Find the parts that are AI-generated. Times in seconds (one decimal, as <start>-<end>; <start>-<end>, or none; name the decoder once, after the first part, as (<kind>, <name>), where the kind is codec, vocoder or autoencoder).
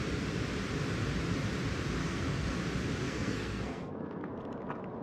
2.0-2.6 (codec, SNAC); 3.0-4.3